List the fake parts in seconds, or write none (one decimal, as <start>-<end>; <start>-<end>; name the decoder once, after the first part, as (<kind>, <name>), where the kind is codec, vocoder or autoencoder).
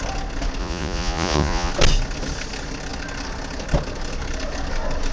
0.6-1.7 (vocoder, Vocos)